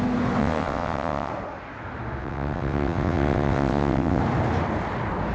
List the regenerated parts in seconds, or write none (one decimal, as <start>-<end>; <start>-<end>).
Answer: 0.4-1.3; 2.2-4.2